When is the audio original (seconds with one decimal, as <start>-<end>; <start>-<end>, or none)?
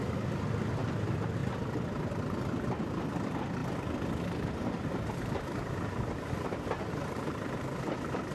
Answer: 0.0-8.3